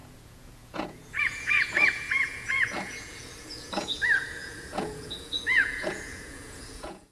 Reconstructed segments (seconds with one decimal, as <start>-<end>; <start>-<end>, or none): 0.0-7.1